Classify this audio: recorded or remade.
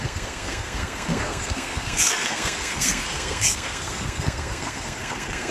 remade